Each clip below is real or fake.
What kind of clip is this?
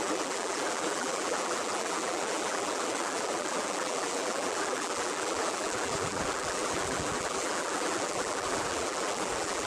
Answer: fake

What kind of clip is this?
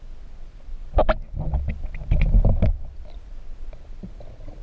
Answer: real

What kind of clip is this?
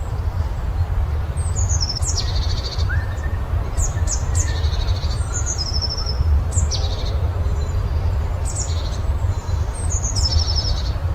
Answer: fake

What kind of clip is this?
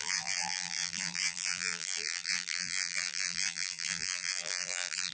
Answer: fake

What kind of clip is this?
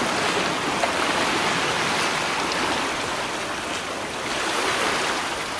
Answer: real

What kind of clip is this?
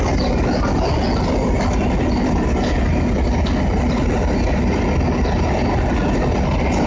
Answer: real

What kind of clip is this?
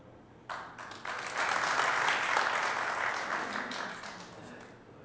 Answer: real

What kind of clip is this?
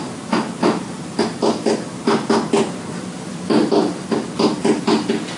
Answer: real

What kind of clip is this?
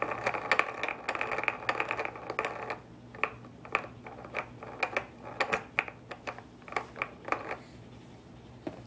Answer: real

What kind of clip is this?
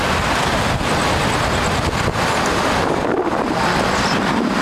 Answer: real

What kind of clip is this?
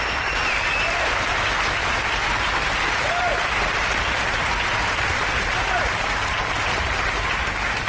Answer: fake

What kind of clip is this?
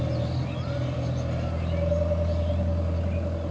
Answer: real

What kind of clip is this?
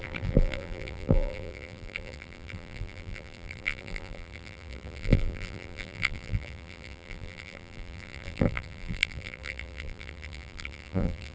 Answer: fake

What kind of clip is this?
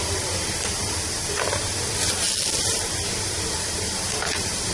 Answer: real